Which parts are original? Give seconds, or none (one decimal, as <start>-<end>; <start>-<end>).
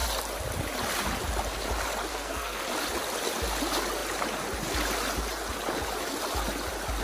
0.0-2.1; 2.6-7.0